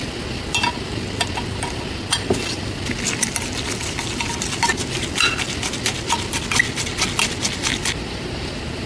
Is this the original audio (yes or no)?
yes